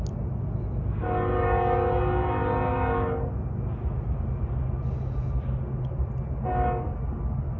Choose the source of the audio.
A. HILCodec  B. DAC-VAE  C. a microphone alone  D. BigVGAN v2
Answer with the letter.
C